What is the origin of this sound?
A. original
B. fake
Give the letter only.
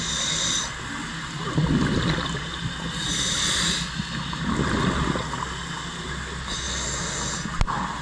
A